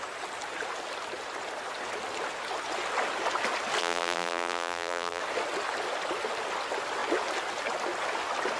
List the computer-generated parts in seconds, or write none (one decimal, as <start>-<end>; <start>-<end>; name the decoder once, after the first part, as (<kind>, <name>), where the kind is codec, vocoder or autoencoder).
3.8-5.2 (vocoder, BigVGAN v2)